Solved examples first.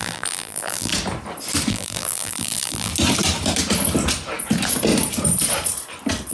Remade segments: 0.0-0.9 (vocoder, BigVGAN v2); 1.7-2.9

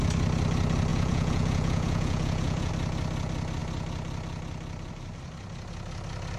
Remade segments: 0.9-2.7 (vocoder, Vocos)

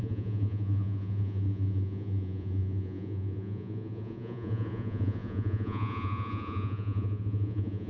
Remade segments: 0.0-7.9 (vocoder, Vocos)

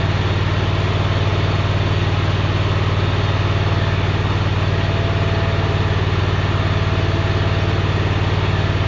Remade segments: none

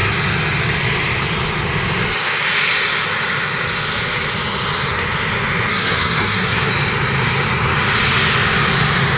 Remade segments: 5.7-6.7 (codec, SNAC)

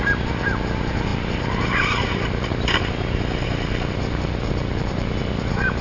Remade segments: 0.0-5.8 (vocoder, BigVGAN v2)